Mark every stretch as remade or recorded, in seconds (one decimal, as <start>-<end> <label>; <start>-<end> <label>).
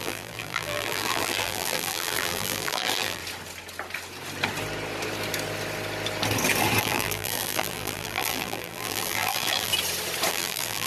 0.0-3.2 remade; 3.2-6.8 recorded; 6.8-9.7 remade; 9.7-10.3 recorded; 10.3-10.9 remade